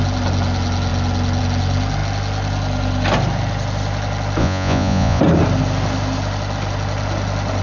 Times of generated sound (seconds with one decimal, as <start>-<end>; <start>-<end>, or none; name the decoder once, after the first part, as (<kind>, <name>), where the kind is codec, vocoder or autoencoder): 4.4-5.2 (vocoder, Vocos)

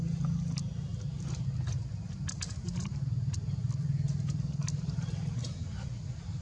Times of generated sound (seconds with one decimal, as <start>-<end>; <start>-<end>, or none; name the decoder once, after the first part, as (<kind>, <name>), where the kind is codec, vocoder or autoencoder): none

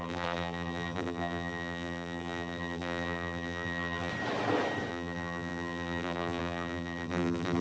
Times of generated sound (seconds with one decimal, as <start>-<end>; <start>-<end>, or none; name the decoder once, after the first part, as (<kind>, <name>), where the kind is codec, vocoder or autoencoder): 0.0-4.1 (vocoder, BigVGAN v2); 4.9-7.6

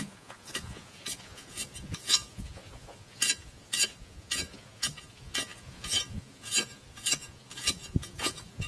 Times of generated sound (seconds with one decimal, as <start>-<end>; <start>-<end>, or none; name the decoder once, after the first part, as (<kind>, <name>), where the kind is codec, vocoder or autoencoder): 0.0-8.7 (vocoder, Vocos)

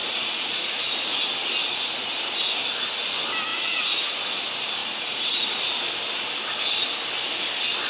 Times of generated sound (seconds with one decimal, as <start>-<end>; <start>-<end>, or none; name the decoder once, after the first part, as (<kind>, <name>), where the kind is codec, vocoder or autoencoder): 0.0-1.2 (vocoder, Vocos); 1.6-2.1; 3.5-4.1; 4.8-5.5

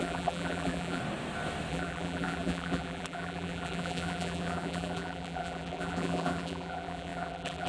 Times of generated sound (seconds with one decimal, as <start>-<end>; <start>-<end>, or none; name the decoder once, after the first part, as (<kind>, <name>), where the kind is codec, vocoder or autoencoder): 0.0-1.0 (vocoder, BigVGAN v2); 1.7-7.7